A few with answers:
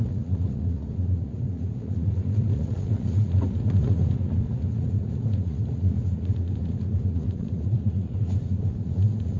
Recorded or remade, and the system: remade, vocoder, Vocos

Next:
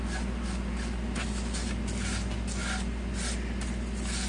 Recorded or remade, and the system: recorded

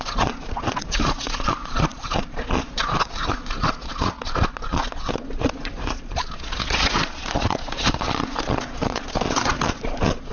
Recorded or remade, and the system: remade, vocoder, Vocos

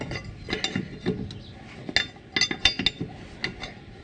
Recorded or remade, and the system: recorded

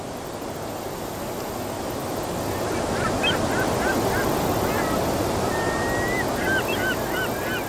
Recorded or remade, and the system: recorded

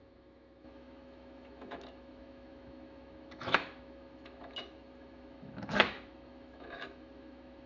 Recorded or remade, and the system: remade, autoencoder, DAC-VAE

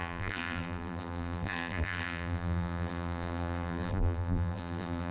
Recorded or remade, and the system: remade, vocoder, BigVGAN v2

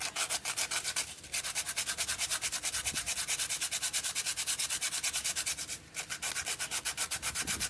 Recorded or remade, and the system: recorded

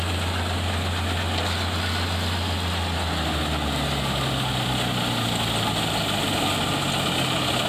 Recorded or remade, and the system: recorded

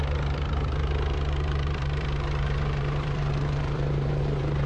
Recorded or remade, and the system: remade, vocoder, BigVGAN v2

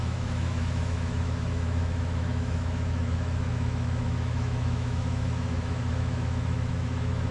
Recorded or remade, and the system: remade, autoencoder, DAC-VAE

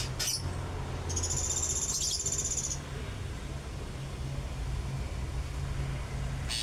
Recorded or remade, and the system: recorded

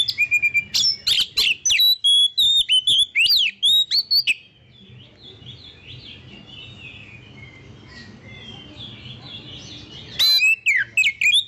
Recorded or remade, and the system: recorded